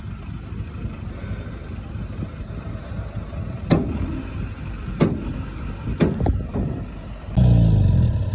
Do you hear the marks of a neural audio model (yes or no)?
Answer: no